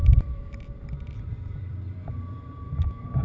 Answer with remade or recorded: remade